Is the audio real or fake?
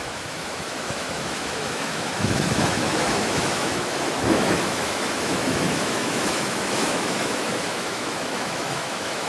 fake